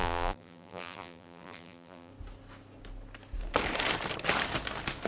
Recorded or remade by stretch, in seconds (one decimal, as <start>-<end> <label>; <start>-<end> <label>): 0.0-2.1 remade; 2.1-5.1 recorded